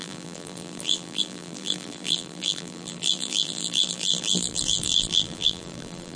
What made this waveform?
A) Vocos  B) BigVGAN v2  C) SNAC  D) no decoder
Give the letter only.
B